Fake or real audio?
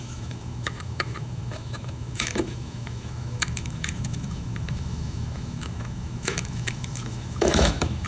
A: fake